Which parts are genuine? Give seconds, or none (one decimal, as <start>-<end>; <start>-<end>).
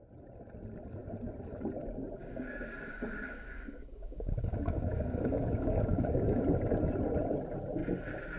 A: 0.0-2.2; 6.4-8.4